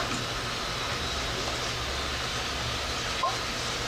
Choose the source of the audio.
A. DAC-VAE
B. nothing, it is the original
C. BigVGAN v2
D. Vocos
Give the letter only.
B